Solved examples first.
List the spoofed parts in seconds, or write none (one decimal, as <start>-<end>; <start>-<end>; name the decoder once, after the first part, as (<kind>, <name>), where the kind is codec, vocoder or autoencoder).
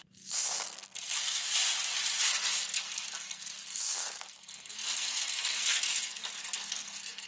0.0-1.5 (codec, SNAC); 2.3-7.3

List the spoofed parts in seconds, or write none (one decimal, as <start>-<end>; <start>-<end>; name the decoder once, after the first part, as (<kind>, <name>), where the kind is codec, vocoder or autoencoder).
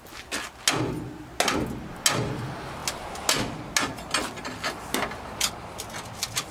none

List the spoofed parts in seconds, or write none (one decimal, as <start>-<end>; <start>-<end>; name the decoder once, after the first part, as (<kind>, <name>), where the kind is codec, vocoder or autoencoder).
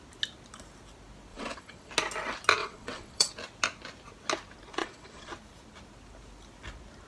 1.3-1.9 (vocoder, WaveNeXt); 2.6-3.3; 4.8-5.3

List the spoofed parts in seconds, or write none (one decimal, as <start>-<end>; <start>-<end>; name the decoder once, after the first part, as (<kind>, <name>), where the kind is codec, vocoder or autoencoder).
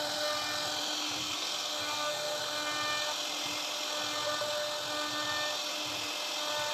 1.2-2.4 (codec, SNAC)